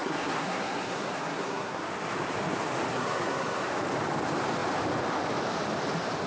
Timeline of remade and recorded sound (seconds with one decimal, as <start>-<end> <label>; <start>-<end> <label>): 0.0-1.8 remade; 1.8-2.9 recorded; 2.9-3.6 remade; 3.6-6.3 recorded